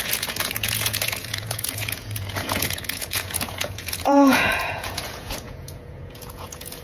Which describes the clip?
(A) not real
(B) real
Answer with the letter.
A